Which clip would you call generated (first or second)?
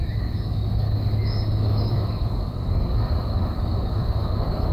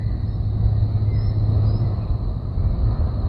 first